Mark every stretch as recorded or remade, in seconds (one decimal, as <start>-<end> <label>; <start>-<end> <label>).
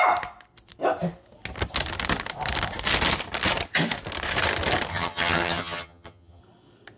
0.0-4.9 recorded; 4.9-6.4 remade; 6.4-7.0 recorded